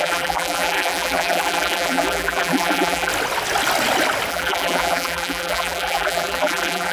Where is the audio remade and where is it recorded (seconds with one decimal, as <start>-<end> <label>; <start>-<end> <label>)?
0.0-3.1 remade; 3.1-4.3 recorded; 4.3-6.9 remade